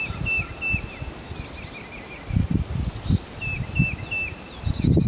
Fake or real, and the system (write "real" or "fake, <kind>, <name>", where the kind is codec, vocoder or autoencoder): real